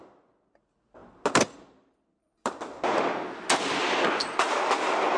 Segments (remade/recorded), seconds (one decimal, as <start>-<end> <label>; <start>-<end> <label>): 0.0-5.2 recorded